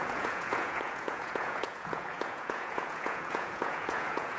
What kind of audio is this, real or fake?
fake